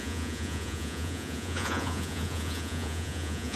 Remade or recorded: remade